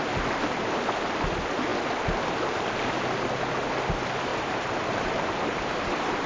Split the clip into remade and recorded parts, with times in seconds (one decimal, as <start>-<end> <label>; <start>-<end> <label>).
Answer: 0.0-4.3 recorded; 4.3-6.3 remade